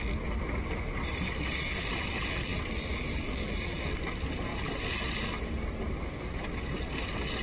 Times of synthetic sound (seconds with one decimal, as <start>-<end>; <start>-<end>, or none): 2.5-3.8